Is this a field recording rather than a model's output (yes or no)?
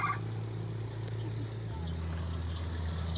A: yes